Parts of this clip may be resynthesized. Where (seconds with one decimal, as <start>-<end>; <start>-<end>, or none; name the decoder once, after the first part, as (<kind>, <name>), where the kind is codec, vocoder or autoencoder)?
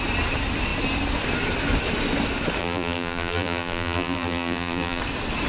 2.6-5.0 (vocoder, BigVGAN v2)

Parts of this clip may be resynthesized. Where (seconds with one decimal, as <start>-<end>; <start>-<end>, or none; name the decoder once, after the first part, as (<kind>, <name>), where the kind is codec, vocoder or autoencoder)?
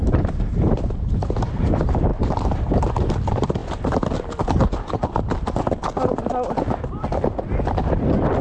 0.0-1.6 (vocoder, BigVGAN v2)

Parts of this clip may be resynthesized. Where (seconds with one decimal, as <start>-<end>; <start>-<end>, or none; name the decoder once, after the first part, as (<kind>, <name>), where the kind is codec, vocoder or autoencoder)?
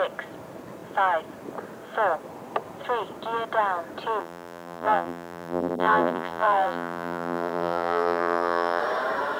4.2-8.8 (vocoder, BigVGAN v2)